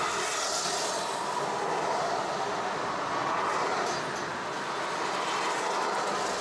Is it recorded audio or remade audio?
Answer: recorded